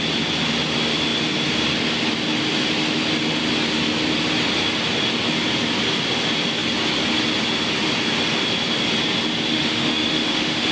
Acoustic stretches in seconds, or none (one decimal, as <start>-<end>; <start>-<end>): 0.0-9.5